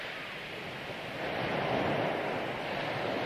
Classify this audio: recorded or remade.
remade